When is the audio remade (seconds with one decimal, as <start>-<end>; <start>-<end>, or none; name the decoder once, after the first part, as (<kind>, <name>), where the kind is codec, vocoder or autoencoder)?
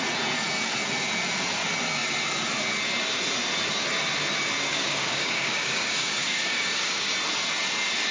4.7-7.1 (codec, DAC)